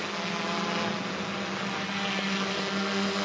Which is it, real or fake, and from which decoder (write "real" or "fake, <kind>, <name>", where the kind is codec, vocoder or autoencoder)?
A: real